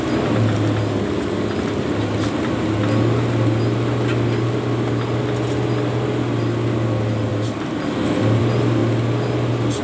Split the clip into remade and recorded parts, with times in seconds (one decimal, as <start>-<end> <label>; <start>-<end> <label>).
0.0-9.8 recorded